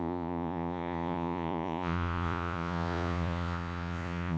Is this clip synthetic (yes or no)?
yes